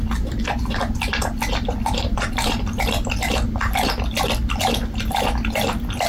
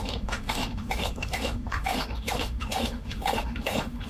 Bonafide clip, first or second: first